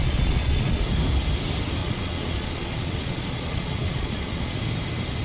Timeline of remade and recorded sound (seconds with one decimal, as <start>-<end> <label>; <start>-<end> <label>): 0.0-0.8 remade; 0.8-1.8 recorded; 1.8-4.6 remade; 4.6-5.2 recorded